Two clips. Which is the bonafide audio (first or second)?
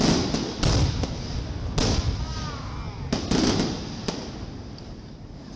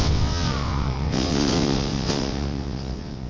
first